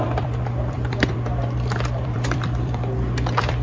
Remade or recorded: remade